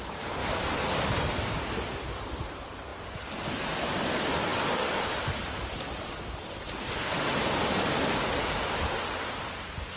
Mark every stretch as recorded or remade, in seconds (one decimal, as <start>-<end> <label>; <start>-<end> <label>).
0.0-10.0 recorded